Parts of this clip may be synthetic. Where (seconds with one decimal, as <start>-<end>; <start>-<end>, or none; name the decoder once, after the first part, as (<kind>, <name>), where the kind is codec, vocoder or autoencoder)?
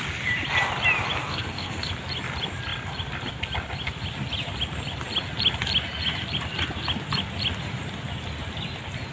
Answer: 1.3-1.9 (codec, SNAC)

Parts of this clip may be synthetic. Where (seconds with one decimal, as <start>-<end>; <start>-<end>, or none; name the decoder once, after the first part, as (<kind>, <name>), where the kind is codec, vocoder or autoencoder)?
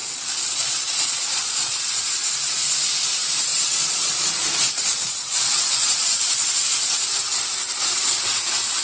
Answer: 0.0-1.8 (vocoder, Vocos); 3.5-6.5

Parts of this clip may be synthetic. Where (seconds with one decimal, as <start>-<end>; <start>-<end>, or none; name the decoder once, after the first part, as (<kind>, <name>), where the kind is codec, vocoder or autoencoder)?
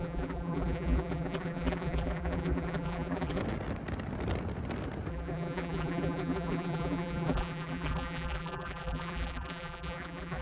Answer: 0.0-3.4 (vocoder, BigVGAN v2); 5.1-10.4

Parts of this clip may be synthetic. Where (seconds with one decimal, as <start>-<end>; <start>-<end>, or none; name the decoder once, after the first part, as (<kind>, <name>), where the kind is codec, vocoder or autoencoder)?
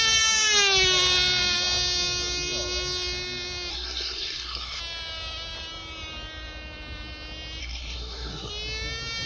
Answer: 3.7-4.8 (codec, SNAC); 7.6-8.5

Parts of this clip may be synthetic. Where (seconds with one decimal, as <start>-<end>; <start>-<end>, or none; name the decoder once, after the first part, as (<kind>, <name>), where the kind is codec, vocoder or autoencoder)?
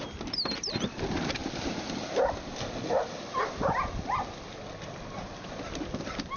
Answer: 1.4-4.2 (vocoder, BigVGAN v2)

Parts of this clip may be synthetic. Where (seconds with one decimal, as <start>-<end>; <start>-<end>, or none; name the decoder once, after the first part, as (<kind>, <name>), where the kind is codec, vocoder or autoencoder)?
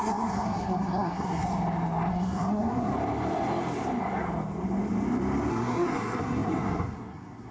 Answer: 0.0-1.5 (codec, SNAC); 2.1-2.9; 5.5-7.5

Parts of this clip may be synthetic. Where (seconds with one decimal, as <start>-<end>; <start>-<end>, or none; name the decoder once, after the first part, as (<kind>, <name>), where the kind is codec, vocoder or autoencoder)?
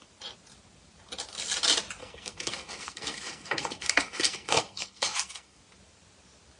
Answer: 2.0-5.6 (codec, SNAC)